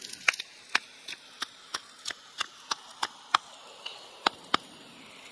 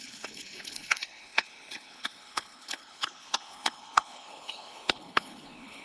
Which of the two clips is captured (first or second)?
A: first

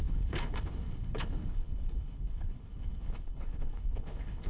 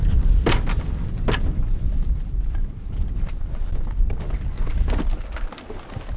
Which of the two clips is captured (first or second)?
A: second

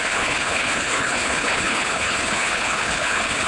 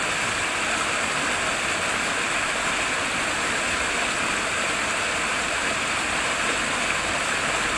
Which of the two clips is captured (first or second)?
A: second